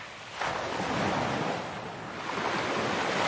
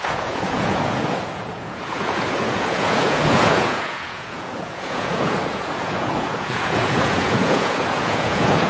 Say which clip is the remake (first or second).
second